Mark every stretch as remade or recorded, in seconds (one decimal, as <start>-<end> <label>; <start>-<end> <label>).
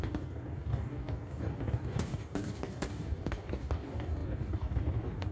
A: 0.0-5.3 remade